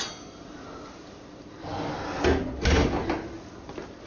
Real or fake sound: real